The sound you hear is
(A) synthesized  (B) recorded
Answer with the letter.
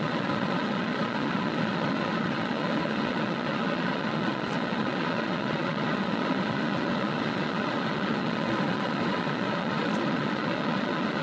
A